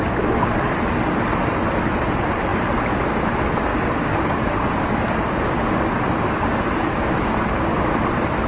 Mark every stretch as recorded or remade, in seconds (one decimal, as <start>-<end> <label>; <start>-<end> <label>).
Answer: 0.0-3.7 recorded; 3.7-7.9 remade; 7.9-8.5 recorded